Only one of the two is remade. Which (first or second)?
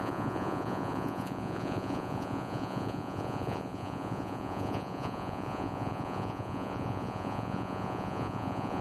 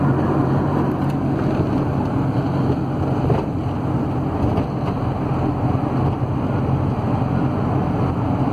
first